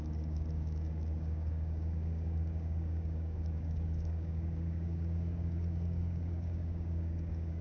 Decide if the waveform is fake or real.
fake